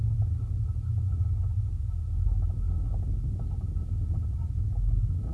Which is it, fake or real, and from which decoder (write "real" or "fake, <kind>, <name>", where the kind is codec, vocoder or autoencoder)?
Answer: real